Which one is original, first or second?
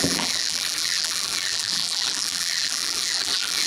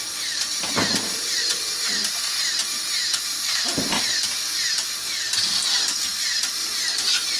second